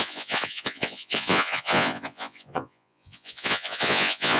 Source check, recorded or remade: remade